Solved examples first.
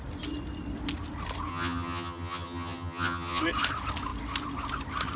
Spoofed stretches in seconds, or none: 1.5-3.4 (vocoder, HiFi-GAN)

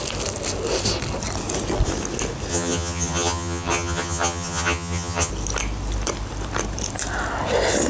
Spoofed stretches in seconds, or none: 2.5-5.3 (vocoder, HiFi-GAN)

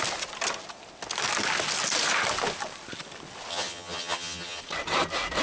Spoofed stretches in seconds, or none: 3.5-4.6 (vocoder, HiFi-GAN)

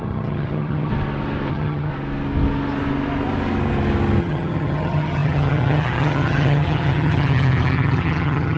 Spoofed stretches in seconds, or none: 0.0-0.9 (vocoder, HiFi-GAN); 1.5-1.9; 4.2-8.6

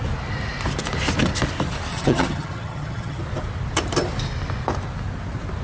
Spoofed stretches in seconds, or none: 1.9-3.2 (vocoder, HiFi-GAN)

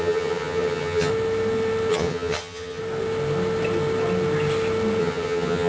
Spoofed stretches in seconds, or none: 0.0-1.1 (vocoder, HiFi-GAN); 1.9-2.8; 5.0-5.7

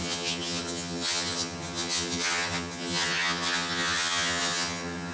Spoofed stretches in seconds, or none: 0.0-5.1 (vocoder, HiFi-GAN)